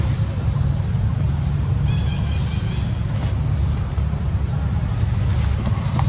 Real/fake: real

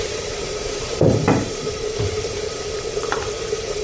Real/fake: fake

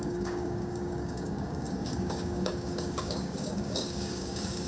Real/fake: fake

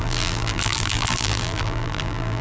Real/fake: fake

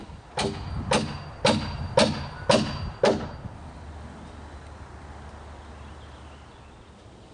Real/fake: real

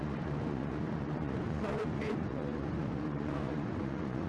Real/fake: fake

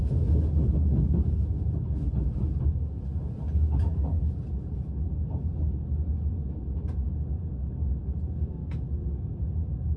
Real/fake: real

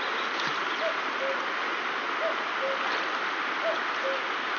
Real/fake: real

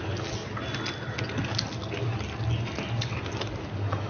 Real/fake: real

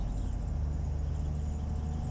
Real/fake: real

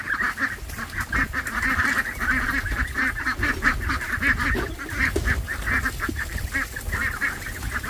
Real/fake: real